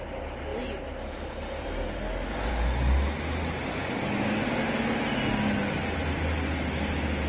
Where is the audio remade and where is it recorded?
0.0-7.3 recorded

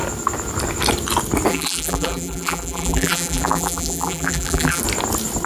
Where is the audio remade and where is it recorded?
0.0-1.5 recorded; 1.5-4.8 remade; 4.8-5.5 recorded